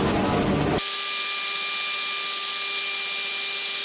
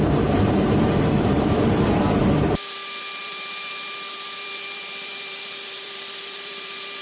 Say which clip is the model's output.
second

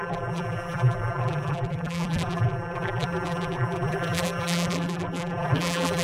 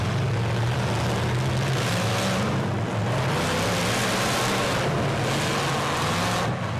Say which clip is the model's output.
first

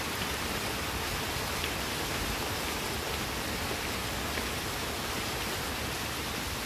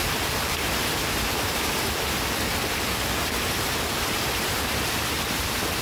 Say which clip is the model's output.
second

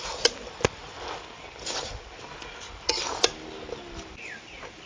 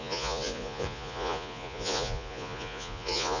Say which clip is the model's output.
second